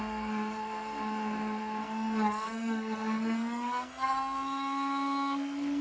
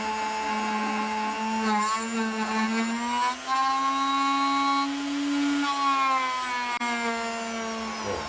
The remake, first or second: first